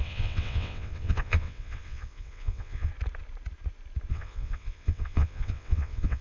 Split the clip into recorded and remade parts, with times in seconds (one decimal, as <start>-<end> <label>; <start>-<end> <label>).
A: 0.0-2.9 remade; 2.9-4.1 recorded; 4.1-6.2 remade